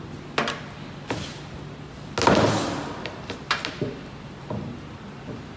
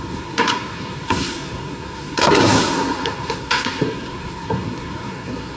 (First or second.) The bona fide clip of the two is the first